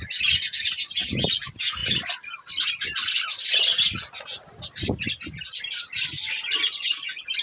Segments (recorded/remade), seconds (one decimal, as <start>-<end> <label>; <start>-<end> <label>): 0.0-7.4 recorded